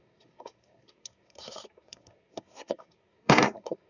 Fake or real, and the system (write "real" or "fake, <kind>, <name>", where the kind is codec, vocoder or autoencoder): fake, codec, SNAC